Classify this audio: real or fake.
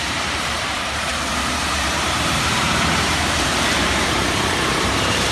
fake